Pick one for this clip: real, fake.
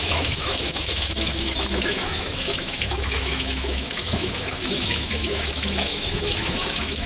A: fake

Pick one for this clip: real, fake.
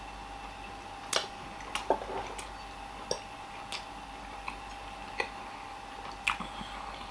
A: real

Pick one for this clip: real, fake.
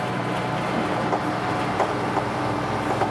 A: real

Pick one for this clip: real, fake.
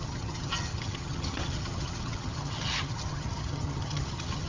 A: fake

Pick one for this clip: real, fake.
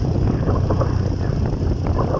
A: real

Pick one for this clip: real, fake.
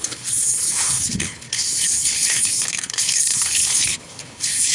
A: fake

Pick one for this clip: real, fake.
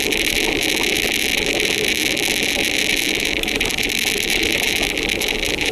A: real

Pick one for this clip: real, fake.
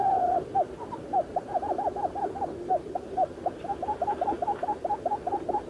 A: real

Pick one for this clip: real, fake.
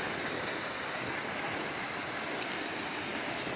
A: real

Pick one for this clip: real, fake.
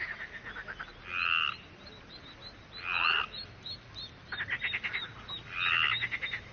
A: real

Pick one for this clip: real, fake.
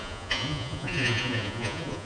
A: fake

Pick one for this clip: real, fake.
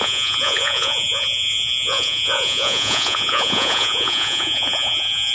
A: fake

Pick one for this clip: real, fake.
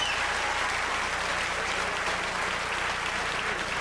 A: real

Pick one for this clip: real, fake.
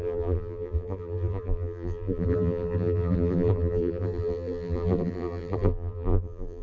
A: fake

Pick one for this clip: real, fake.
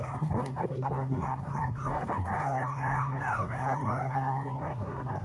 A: fake